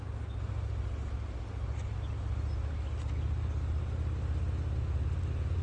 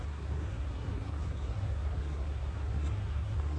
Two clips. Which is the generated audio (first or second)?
second